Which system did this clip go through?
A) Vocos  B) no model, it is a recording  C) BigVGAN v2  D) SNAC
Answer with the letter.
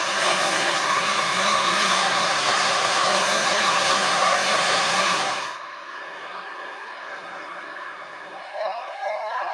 D